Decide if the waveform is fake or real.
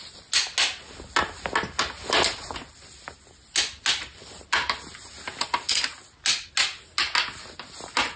real